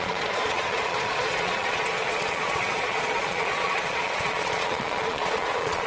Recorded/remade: remade